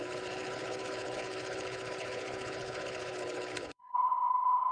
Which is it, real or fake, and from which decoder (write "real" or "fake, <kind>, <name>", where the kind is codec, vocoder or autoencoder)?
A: fake, codec, HILCodec